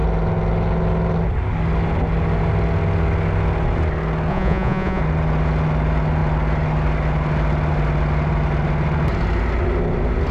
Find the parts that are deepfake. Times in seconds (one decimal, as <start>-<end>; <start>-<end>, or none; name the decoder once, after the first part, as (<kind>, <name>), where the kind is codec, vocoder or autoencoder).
4.3-5.0 (vocoder, Vocos)